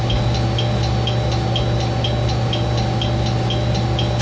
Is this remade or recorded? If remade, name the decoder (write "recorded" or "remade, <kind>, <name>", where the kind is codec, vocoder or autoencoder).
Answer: recorded